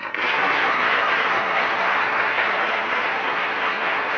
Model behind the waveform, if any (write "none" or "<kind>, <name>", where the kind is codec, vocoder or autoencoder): codec, SNAC